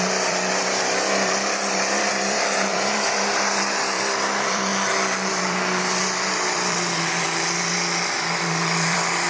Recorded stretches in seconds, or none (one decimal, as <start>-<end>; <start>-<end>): 4.7-5.3